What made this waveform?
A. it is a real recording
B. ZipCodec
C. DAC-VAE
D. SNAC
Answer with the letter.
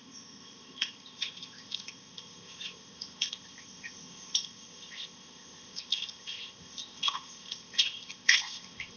B